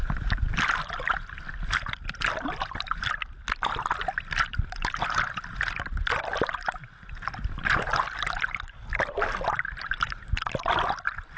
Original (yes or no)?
yes